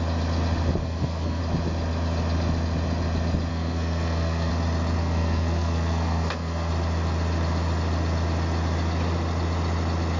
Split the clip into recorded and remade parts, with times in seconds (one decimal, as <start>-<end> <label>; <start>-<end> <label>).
0.0-0.8 recorded; 0.8-1.4 remade; 1.4-3.5 recorded; 3.5-4.5 remade; 4.5-5.0 recorded; 5.0-6.7 remade; 6.7-10.2 recorded